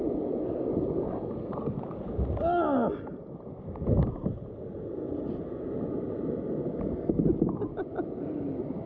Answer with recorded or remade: recorded